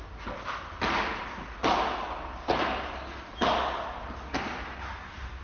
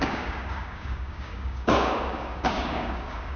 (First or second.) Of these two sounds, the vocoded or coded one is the second